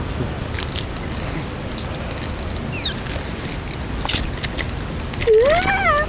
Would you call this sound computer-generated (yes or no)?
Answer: no